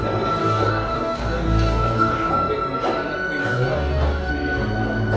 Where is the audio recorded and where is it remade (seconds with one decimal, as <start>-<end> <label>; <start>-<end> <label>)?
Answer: 0.0-0.4 recorded; 0.4-2.3 remade; 2.3-3.4 recorded; 3.4-4.3 remade; 4.3-5.2 recorded